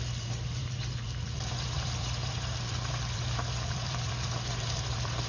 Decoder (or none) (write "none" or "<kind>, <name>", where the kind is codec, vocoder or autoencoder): vocoder, BigVGAN v2